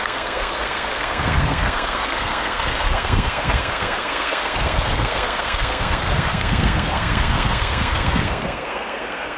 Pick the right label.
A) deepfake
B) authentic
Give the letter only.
A